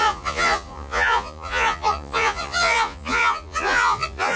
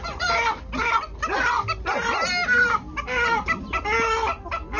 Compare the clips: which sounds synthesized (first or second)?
first